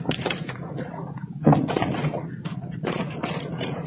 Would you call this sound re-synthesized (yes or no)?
yes